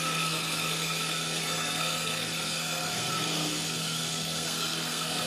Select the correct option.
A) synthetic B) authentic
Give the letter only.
A